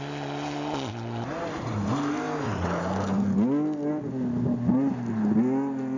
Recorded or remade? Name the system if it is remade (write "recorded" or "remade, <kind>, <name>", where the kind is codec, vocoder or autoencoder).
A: recorded